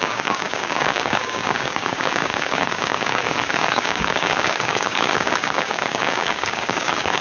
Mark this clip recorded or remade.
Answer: remade